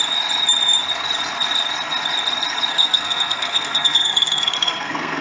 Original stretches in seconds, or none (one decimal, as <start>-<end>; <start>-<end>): 0.0-2.7